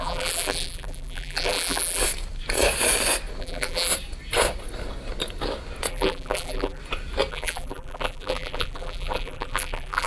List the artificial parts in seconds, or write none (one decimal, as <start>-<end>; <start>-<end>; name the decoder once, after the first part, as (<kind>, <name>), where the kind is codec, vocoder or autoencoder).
0.0-2.0 (vocoder, BigVGAN v2); 3.4-3.9; 5.9-6.8; 7.3-10.1